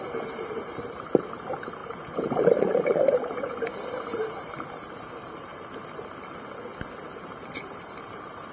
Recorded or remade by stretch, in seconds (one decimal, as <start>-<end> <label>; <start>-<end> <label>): 0.0-5.5 remade; 5.5-7.2 recorded; 7.2-8.5 remade